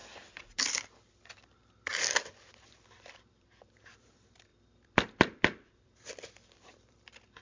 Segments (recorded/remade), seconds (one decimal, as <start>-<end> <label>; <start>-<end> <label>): 0.0-1.1 recorded; 1.1-1.9 remade; 1.9-2.5 recorded; 2.5-7.4 remade